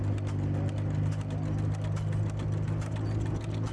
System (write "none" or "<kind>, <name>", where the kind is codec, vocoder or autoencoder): none